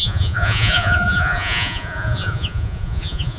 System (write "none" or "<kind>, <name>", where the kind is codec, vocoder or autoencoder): vocoder, Vocos